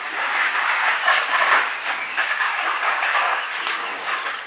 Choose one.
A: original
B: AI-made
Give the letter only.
B